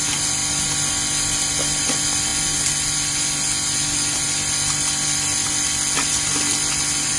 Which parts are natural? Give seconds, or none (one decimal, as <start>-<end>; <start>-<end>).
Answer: 0.0-7.2